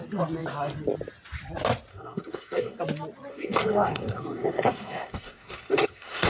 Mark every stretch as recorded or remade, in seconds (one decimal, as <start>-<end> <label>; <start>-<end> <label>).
0.0-1.9 recorded; 1.9-2.8 remade; 2.8-3.3 recorded; 3.3-6.3 remade